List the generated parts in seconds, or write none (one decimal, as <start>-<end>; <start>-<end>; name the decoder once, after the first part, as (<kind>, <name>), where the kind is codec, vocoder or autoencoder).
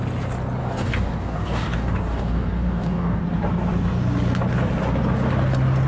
0.6-3.2 (codec, DAC)